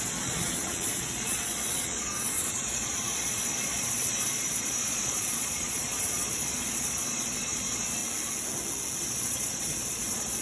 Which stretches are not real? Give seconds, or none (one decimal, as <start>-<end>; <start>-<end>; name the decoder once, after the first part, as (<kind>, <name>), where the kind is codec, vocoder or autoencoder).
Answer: 0.0-8.0 (vocoder, Vocos); 9.0-10.4